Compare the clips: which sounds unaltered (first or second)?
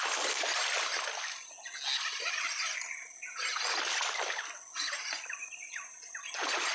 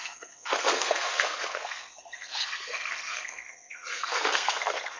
first